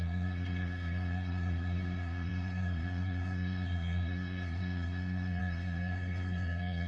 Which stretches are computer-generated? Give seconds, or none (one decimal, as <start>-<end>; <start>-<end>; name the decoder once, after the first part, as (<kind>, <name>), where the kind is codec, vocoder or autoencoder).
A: 0.0-6.9 (codec, SNAC)